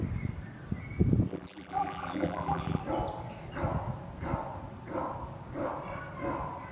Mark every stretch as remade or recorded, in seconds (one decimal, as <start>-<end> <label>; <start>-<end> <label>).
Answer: 0.0-1.3 recorded; 1.3-2.8 remade; 2.8-6.7 recorded

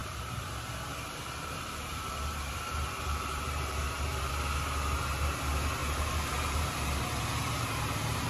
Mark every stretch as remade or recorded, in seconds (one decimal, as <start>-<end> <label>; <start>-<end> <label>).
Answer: 0.0-0.5 remade; 0.5-0.9 recorded; 0.9-4.3 remade; 4.3-5.8 recorded; 5.8-8.3 remade